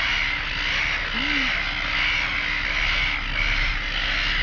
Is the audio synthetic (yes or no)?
no